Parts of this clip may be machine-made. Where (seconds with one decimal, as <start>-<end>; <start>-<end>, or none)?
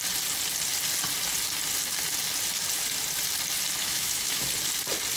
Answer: 3.8-4.5